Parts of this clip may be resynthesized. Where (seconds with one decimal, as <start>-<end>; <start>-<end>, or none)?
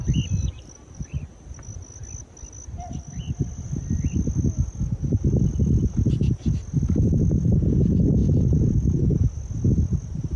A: none